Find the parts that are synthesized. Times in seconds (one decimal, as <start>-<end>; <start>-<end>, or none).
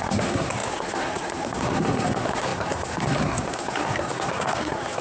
0.0-5.0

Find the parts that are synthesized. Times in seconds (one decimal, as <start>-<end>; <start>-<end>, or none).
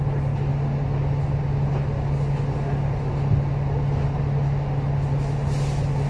none